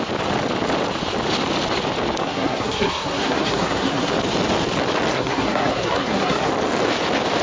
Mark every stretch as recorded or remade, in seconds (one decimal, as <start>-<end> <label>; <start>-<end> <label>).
0.0-2.2 recorded; 2.2-4.1 remade; 4.1-5.1 recorded; 5.1-6.5 remade; 6.5-7.4 recorded